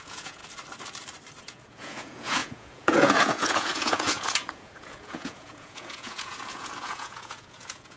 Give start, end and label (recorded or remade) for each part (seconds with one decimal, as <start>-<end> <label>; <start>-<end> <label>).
0.0-0.4 remade; 0.4-1.4 recorded; 1.4-8.0 remade